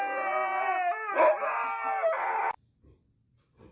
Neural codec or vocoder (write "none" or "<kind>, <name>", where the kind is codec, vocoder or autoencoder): none